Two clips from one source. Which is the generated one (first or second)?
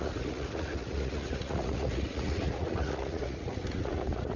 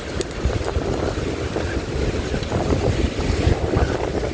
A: first